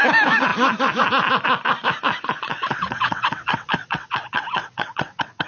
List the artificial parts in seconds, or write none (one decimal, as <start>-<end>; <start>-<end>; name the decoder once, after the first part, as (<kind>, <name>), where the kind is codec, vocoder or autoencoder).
2.5-5.5 (vocoder, WaveNeXt)